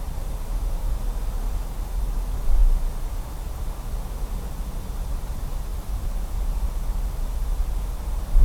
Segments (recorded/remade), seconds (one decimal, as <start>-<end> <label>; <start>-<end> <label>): 0.0-2.6 remade; 2.6-5.1 recorded; 5.1-8.4 remade